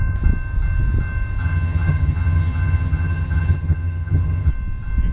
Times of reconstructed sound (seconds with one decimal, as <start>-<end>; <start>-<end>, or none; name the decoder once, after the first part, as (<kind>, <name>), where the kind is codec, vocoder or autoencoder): 1.4-4.5 (vocoder, HiFi-GAN)